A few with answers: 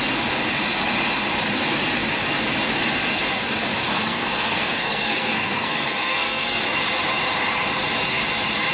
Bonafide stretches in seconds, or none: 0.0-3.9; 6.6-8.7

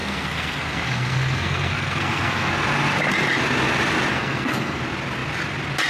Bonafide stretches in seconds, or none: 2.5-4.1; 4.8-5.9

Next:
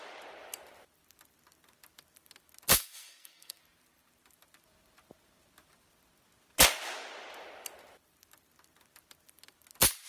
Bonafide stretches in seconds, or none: 0.0-2.7; 3.6-10.1